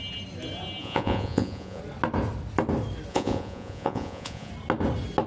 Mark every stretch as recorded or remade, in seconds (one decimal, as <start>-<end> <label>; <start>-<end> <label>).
0.0-0.8 recorded; 0.8-1.8 remade; 1.8-3.1 recorded; 3.1-4.5 remade; 4.5-5.3 recorded